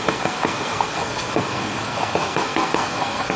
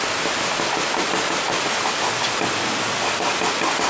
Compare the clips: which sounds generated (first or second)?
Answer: first